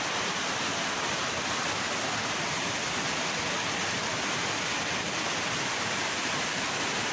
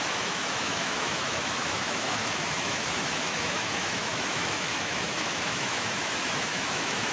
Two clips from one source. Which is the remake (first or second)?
second